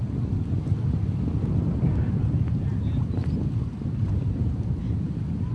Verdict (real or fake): real